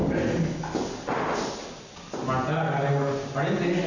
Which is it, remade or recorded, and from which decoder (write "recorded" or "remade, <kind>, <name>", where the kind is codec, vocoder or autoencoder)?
recorded